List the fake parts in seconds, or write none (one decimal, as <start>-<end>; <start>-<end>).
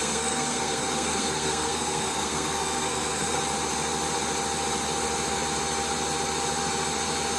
0.0-3.4